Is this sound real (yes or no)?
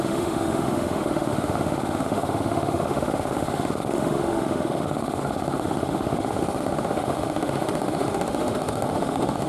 no